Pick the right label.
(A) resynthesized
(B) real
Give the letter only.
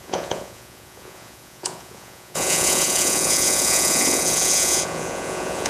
A